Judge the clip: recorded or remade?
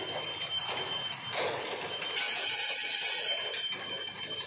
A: recorded